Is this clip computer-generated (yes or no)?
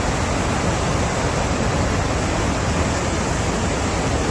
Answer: no